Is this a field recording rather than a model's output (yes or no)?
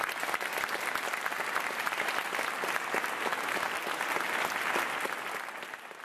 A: yes